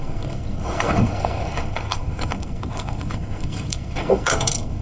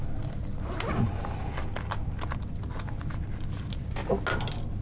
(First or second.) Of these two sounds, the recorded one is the second